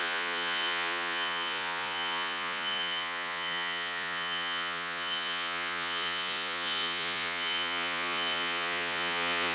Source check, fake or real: fake